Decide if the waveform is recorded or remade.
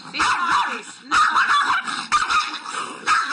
recorded